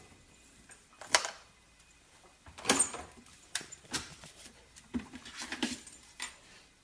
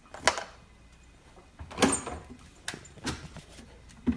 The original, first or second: second